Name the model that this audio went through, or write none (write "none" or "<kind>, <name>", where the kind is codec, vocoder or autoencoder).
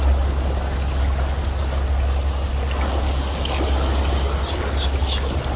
none